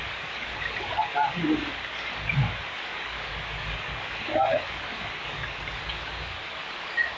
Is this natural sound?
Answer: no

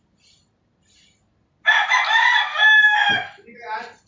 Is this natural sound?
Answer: yes